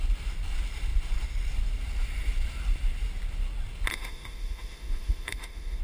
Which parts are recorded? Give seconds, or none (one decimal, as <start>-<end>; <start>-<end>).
0.0-3.9